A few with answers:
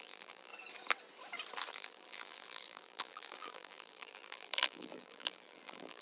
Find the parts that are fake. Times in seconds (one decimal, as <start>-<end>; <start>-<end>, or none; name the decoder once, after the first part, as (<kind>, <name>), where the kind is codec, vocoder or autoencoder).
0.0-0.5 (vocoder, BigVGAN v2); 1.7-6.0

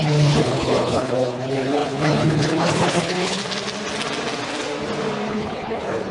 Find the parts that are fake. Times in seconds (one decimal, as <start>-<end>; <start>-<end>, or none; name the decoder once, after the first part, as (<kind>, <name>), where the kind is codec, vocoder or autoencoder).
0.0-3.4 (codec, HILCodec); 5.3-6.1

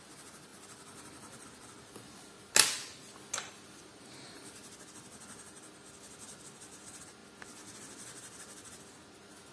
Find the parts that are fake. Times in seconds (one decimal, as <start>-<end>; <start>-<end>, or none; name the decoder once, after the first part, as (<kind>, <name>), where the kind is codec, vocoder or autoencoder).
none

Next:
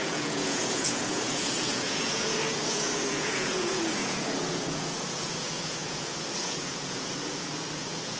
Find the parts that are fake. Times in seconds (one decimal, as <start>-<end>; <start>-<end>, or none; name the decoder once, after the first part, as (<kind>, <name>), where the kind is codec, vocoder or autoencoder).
0.0-8.2 (vocoder, Vocos)

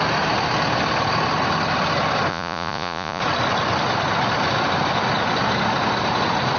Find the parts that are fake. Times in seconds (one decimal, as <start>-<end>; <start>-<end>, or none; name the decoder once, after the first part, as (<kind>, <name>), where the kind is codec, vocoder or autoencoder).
2.3-3.2 (vocoder, Vocos)